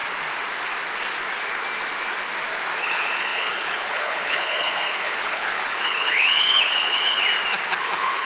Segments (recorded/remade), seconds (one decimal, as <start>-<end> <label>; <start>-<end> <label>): 0.0-2.8 recorded; 2.8-7.2 remade; 7.2-7.7 recorded; 7.7-8.2 remade